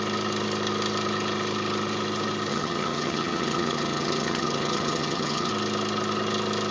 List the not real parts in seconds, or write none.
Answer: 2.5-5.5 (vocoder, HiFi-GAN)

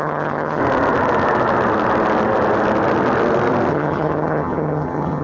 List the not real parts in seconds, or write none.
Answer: 0.0-0.6 (vocoder, HiFi-GAN); 3.7-5.2

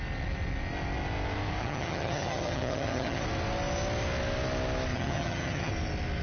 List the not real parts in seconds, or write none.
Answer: 1.6-3.2 (vocoder, HiFi-GAN); 4.9-5.7

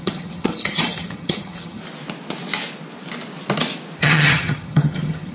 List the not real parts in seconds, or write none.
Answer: 0.0-1.8 (vocoder, HiFi-GAN); 4.0-5.3